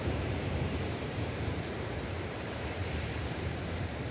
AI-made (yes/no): yes